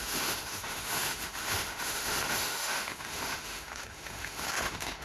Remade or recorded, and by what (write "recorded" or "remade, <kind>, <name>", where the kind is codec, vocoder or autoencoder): remade, autoencoder, DAC-VAE